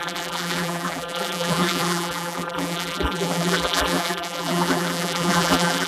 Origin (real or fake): fake